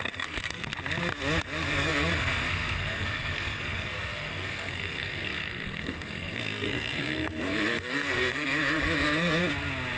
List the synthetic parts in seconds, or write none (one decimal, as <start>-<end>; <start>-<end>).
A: 0.0-0.7; 1.4-9.4